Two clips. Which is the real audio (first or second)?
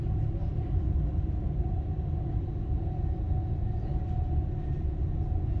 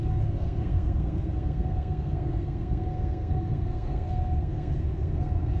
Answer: first